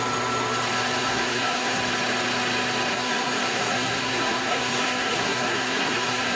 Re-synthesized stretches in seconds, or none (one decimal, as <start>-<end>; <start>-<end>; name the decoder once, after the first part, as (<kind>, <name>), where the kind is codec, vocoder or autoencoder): 1.0-1.8 (codec, SNAC); 2.9-6.4